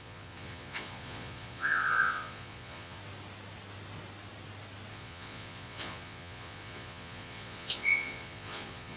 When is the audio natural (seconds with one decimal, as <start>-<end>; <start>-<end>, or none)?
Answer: 3.0-4.9